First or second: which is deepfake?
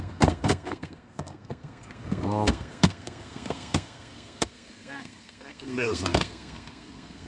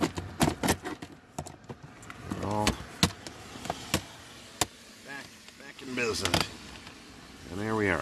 first